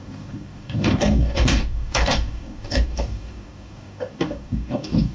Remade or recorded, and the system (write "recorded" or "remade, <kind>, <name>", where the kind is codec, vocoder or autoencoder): remade, codec, DAC